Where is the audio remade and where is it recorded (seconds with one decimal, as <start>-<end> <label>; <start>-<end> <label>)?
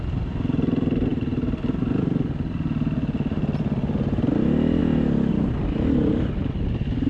0.0-7.1 recorded